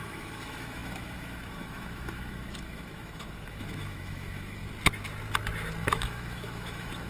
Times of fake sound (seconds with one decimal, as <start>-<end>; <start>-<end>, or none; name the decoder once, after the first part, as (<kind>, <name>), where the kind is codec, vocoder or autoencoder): 0.0-4.6 (autoencoder, DAC-VAE); 5.8-7.1